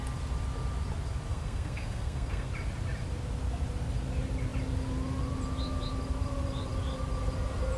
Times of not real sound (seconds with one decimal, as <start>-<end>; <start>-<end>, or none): 1.3-2.5

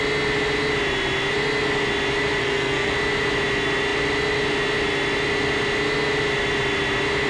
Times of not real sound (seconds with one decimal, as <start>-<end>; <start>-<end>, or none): 2.4-2.9

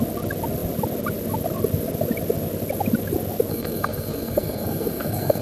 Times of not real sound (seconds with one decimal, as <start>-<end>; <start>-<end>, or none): 3.5-5.4

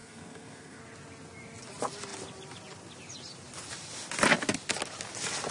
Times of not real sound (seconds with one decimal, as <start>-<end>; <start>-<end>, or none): 0.0-0.8

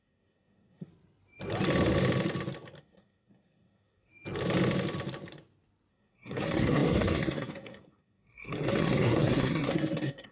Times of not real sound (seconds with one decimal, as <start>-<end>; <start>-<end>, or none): 0.0-0.9; 2.8-4.1; 5.9-10.3

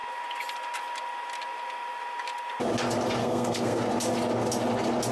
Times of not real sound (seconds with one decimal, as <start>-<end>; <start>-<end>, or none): 3.2-3.8

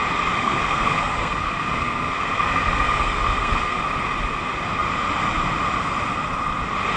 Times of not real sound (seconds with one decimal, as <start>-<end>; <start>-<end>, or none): 0.4-3.8

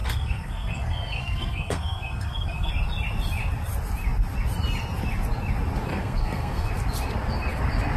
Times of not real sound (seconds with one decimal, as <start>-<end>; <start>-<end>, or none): 0.0-2.7; 5.9-6.7